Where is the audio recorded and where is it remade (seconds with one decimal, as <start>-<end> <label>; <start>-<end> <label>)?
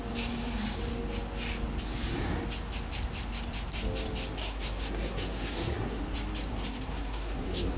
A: 0.0-4.4 recorded; 4.4-6.0 remade; 6.0-6.5 recorded; 6.5-7.8 remade